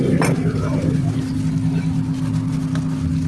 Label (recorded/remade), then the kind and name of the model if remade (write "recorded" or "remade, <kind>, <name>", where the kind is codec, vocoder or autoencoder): recorded